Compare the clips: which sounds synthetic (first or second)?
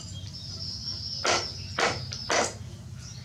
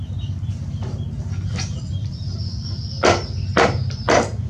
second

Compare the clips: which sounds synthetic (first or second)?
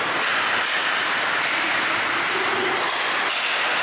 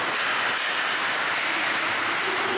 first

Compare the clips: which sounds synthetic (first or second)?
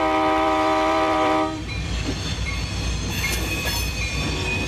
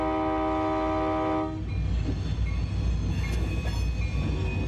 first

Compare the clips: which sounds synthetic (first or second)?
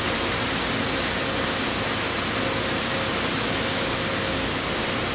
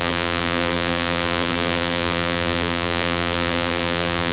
second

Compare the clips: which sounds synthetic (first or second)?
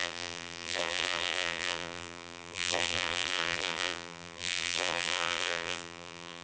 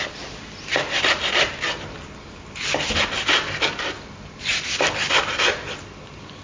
first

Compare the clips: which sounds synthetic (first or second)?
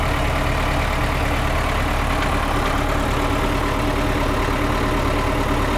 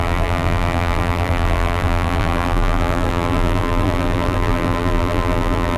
second